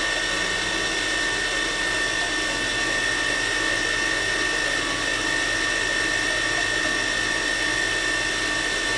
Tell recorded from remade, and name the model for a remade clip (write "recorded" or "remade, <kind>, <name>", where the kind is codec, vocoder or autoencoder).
recorded